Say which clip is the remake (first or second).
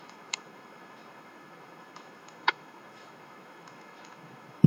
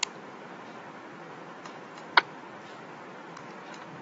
first